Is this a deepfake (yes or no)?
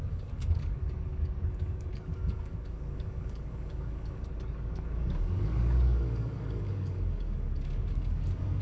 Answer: yes